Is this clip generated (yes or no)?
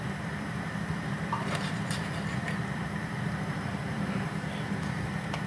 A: yes